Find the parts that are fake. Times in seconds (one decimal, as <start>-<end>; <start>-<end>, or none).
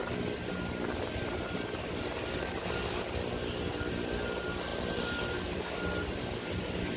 none